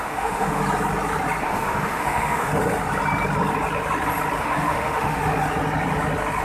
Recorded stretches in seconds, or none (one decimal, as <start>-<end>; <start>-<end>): 0.6-1.4; 2.5-4.4; 5.2-6.4